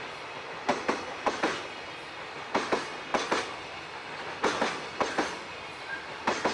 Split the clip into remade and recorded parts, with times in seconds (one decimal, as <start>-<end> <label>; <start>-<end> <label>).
0.0-0.7 recorded; 0.7-1.3 remade; 1.3-6.5 recorded